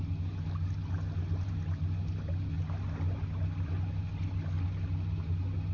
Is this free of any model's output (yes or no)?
yes